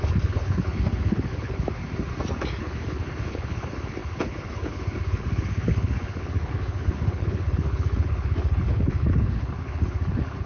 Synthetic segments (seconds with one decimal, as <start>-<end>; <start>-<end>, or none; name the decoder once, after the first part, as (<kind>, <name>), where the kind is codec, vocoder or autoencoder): 0.0-1.8 (codec, HILCodec); 2.6-10.5